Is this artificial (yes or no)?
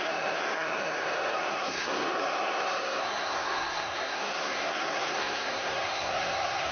yes